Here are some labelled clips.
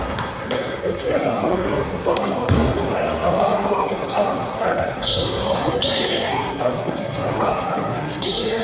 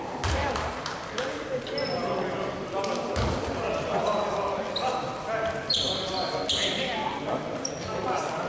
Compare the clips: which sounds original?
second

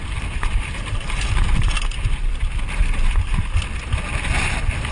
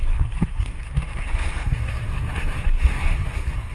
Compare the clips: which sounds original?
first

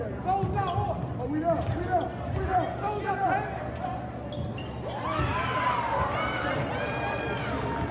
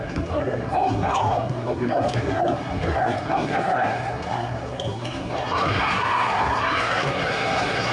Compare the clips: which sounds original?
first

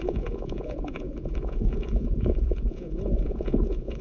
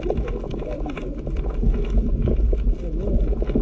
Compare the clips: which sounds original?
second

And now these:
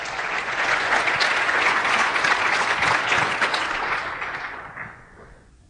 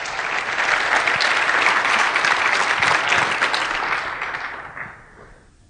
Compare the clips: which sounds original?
second